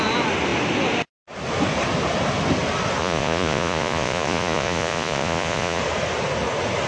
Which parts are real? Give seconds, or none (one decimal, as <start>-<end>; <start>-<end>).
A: 0.0-3.0; 5.8-6.9